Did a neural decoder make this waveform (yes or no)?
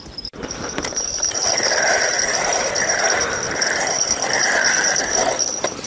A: no